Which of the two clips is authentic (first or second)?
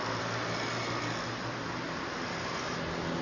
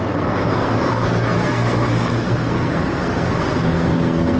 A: first